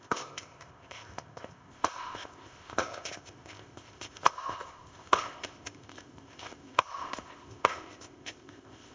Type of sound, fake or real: fake